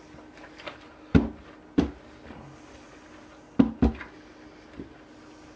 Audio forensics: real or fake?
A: real